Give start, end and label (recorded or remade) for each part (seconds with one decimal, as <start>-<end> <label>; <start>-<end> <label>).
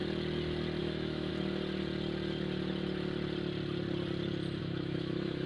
0.0-0.8 recorded; 0.8-1.3 remade; 1.3-4.6 recorded; 4.6-5.5 remade